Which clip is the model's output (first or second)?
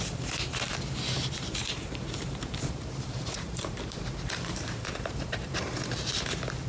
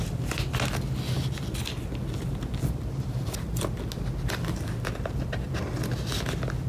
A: first